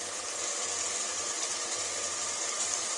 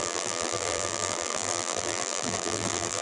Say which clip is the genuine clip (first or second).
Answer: first